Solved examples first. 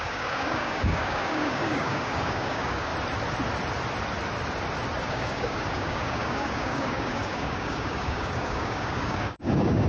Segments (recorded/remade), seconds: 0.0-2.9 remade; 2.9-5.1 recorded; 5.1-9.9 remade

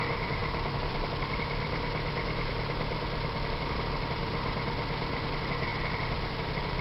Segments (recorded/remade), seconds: 0.0-6.8 recorded